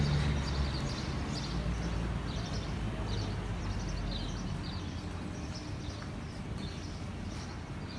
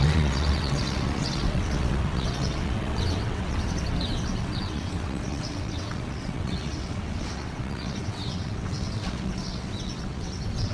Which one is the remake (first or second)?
second